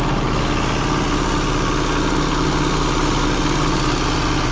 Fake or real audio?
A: real